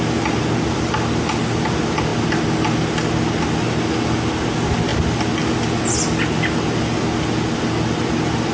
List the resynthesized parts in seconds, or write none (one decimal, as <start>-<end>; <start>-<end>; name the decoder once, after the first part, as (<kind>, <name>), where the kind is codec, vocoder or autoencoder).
none